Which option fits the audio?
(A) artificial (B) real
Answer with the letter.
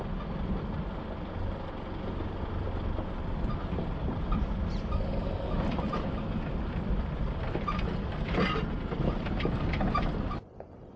B